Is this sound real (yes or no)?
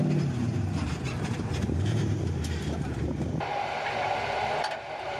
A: no